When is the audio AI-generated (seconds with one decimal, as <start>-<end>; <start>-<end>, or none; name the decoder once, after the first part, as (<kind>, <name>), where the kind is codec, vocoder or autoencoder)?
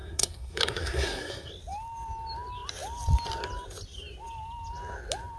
0.0-1.5 (codec, SNAC)